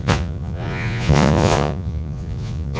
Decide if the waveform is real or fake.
fake